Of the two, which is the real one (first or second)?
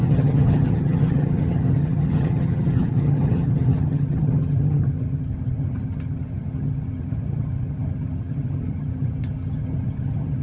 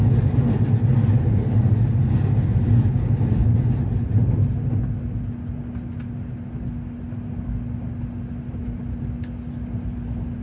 second